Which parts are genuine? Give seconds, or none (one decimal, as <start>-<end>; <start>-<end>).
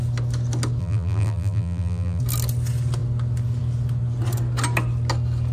0.0-0.8; 2.2-5.5